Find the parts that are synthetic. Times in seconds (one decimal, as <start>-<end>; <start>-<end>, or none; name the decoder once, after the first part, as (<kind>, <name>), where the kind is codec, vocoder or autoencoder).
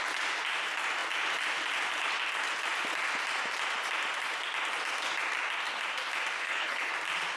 6.4-6.9 (codec, HILCodec)